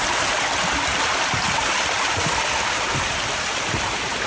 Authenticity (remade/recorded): recorded